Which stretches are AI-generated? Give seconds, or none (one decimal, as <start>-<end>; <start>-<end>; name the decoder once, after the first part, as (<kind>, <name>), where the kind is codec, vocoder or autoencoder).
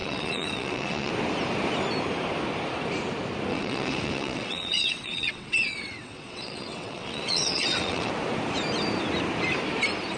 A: 0.0-1.1 (vocoder, WaveNeXt); 3.5-8.1